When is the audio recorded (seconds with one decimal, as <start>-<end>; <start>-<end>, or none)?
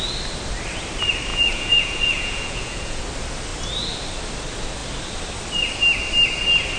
0.0-1.3; 3.0-6.8